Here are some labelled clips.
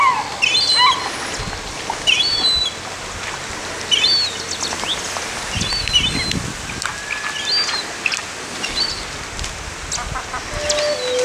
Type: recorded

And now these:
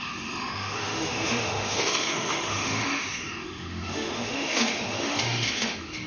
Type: remade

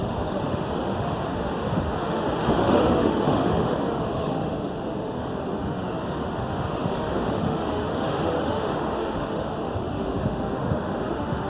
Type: remade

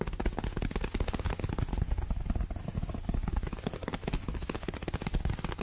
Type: recorded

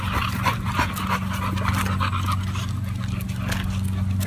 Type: recorded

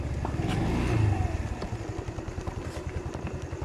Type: recorded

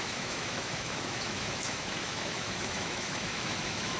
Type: remade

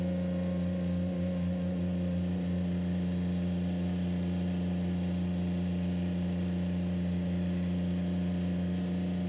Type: recorded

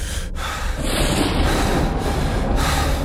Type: recorded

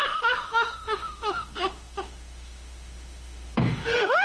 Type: remade